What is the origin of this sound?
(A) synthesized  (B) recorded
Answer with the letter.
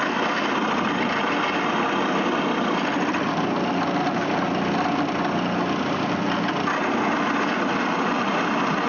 B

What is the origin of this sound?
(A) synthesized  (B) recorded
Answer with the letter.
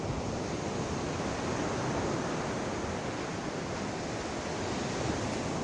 B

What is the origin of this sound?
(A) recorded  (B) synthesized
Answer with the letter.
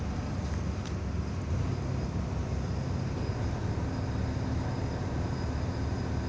A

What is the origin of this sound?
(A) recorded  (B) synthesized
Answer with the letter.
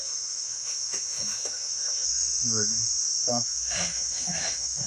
B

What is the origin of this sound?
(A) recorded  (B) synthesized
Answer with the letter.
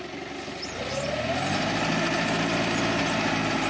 A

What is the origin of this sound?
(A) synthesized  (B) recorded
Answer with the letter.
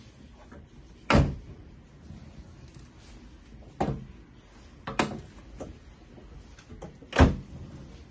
B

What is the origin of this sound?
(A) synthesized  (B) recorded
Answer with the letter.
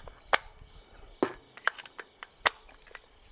B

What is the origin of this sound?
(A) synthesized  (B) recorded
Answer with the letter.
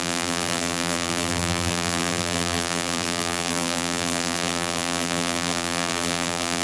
A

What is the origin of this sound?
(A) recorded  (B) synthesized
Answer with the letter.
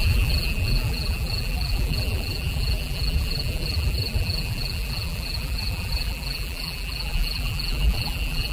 B